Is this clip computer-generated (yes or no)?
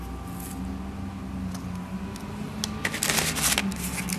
no